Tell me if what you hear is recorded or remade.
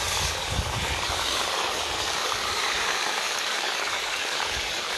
remade